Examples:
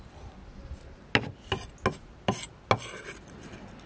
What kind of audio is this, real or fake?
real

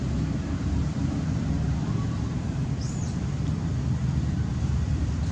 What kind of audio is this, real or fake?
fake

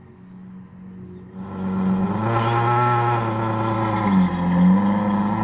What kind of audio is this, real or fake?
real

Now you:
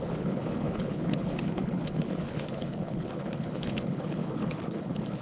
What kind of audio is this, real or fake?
fake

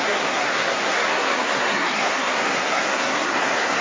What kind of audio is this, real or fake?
fake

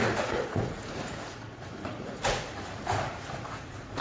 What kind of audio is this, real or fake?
fake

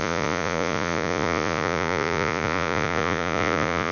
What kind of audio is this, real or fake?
fake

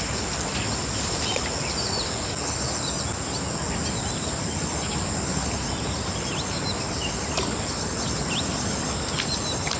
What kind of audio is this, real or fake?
real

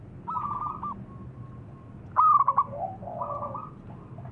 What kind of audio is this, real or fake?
real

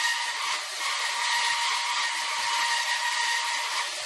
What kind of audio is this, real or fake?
real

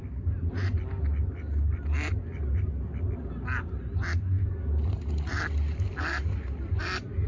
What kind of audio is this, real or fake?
real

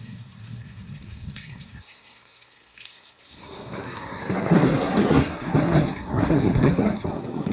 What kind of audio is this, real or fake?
fake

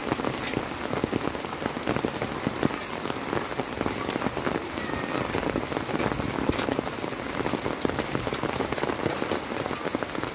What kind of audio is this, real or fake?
real